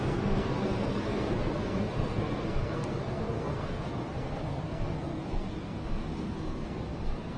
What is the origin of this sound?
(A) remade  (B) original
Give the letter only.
A